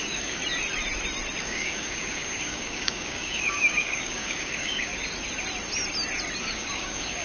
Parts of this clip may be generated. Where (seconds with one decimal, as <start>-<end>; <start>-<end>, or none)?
0.0-0.4; 1.4-4.9; 6.4-7.2